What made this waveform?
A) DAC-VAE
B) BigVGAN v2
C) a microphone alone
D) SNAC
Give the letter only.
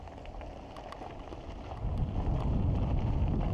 C